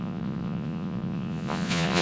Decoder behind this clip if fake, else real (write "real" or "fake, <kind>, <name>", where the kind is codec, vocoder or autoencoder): fake, vocoder, Vocos